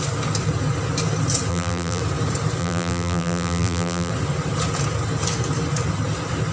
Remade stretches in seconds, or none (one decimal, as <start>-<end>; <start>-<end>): 1.5-2.0; 2.6-4.1